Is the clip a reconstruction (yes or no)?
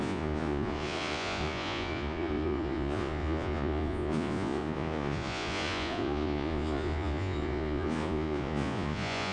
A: yes